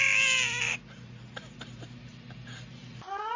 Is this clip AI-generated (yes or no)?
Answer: no